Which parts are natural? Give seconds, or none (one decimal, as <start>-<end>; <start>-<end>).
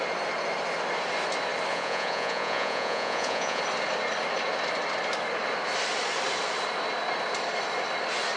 0.0-1.7; 3.6-8.4